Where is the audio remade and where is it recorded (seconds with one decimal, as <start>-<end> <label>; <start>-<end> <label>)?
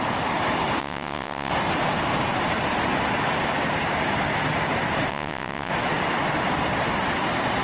0.0-0.8 recorded; 0.8-1.5 remade; 1.5-5.1 recorded; 5.1-5.7 remade; 5.7-7.6 recorded